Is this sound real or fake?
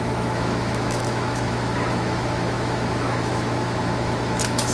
fake